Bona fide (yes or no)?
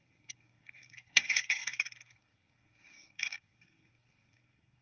no